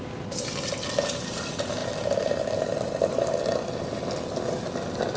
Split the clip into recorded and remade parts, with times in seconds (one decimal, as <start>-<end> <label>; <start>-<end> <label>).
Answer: 0.0-5.2 recorded